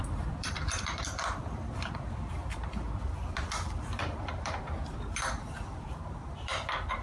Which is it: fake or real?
fake